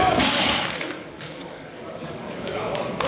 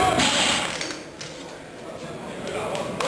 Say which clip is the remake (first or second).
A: first